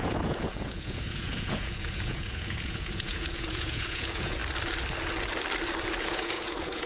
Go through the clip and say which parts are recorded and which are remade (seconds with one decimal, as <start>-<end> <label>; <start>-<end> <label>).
0.0-4.4 remade; 4.4-6.0 recorded; 6.0-6.9 remade